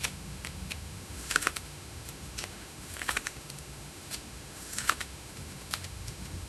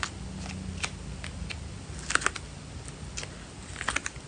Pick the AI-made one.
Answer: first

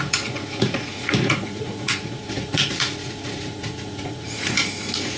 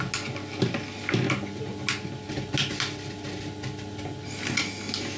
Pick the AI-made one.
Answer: first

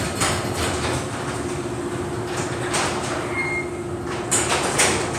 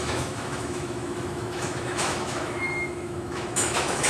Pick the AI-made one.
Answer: second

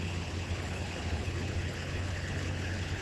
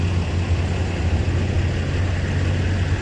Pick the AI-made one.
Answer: first